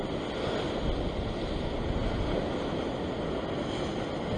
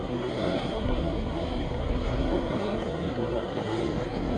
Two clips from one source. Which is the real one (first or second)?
first